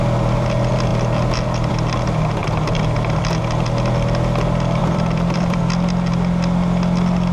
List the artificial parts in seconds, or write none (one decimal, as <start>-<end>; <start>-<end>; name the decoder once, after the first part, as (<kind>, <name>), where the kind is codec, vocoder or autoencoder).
2.4-3.4 (vocoder, BigVGAN v2); 4.8-5.6